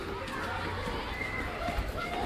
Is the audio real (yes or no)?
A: yes